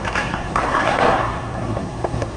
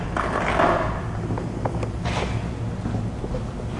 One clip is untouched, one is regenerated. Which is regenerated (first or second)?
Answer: first